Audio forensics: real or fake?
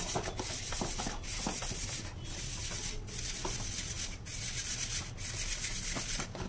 real